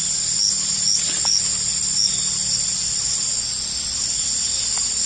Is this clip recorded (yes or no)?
yes